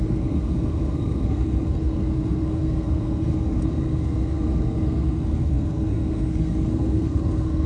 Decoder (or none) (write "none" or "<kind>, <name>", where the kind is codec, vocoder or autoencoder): codec, SNAC